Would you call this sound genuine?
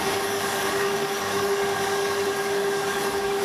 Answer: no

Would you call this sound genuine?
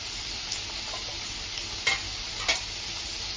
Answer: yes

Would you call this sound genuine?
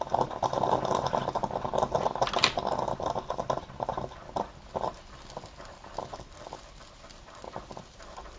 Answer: yes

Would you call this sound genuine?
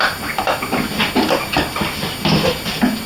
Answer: yes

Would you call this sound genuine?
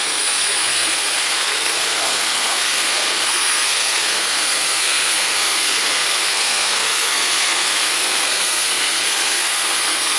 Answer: no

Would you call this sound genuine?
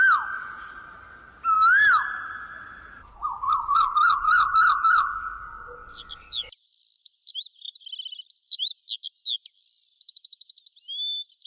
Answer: yes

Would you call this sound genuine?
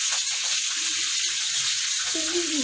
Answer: no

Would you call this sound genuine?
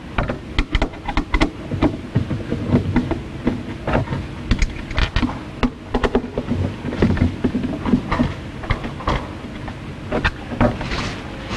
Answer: yes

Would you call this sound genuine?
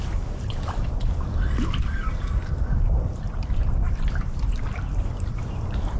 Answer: yes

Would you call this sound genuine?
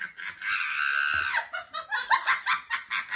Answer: yes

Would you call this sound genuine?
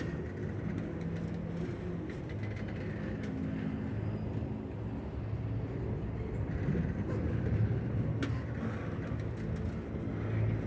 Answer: yes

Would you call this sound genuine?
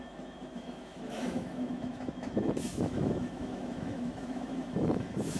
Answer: no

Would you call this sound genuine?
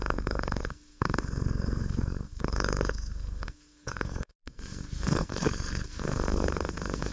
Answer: no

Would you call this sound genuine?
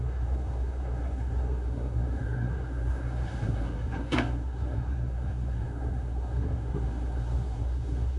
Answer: no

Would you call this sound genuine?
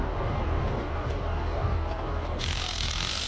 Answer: no